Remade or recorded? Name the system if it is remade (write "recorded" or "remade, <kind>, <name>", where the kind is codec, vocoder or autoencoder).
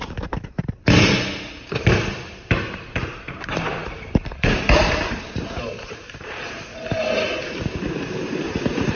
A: remade, vocoder, BigVGAN v2